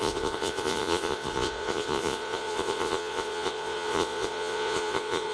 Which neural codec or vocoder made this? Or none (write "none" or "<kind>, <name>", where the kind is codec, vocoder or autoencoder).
vocoder, Vocos